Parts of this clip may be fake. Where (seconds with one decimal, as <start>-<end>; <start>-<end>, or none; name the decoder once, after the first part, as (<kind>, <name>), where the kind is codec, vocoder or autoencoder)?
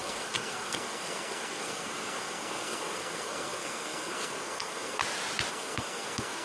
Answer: 0.0-5.0 (codec, SNAC); 5.5-6.4